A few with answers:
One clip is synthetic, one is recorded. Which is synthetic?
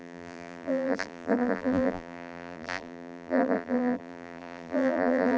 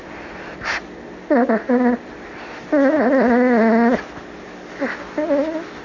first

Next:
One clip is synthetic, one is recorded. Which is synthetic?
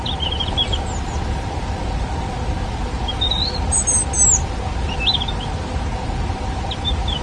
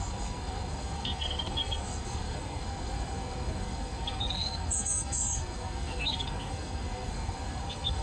second